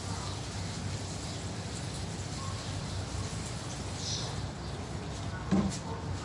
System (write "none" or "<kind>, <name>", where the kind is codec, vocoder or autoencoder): none